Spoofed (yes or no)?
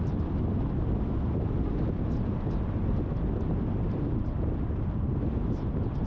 yes